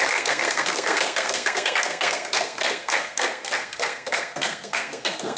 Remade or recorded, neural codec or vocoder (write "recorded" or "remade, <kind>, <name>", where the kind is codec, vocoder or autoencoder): remade, codec, SNAC